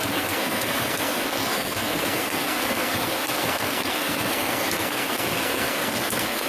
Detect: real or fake fake